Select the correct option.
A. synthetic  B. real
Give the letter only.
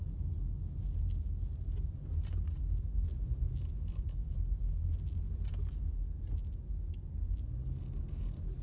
B